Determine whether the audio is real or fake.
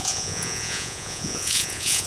fake